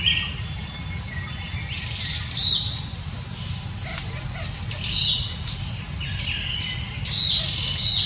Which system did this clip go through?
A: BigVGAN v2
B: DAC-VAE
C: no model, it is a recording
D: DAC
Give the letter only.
C